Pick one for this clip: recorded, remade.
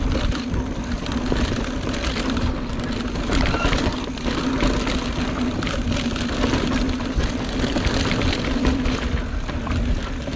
recorded